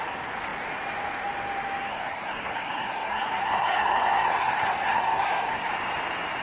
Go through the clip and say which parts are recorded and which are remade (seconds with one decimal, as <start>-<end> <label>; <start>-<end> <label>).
0.0-1.9 recorded; 1.9-5.7 remade; 5.7-6.4 recorded